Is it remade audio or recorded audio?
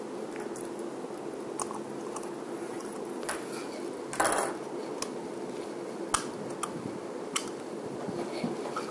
recorded